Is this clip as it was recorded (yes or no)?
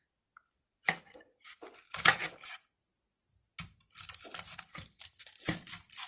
yes